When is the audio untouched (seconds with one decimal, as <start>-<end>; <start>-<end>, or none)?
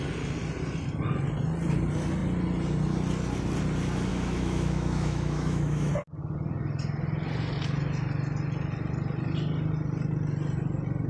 0.0-4.1; 5.9-11.1